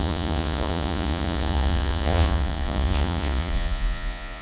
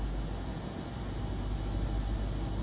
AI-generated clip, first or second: first